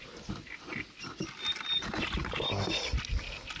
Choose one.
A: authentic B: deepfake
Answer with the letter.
A